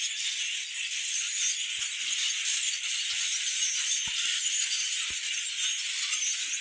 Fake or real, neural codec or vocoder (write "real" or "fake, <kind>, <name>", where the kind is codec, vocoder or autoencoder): real